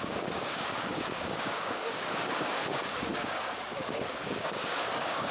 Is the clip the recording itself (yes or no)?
no